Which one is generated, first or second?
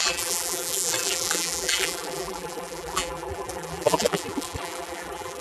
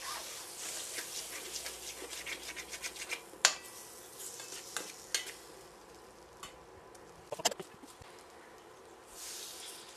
first